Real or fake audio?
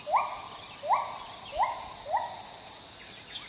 real